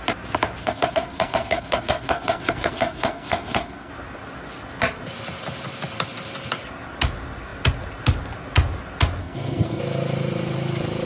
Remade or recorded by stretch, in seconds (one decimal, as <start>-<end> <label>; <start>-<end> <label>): 0.0-0.6 recorded; 0.6-3.9 remade; 3.9-9.2 recorded; 9.2-9.8 remade; 9.8-11.1 recorded